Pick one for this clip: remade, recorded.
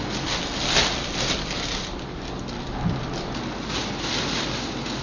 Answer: recorded